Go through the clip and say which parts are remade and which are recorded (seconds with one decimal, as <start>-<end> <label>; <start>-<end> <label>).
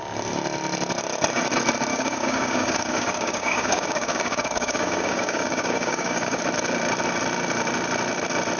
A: 0.0-1.9 recorded; 1.9-6.4 remade; 6.4-8.6 recorded